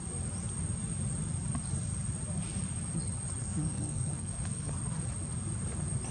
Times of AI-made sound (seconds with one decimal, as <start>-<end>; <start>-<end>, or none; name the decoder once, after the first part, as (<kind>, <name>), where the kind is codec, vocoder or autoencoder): 3.4-4.7 (codec, SNAC)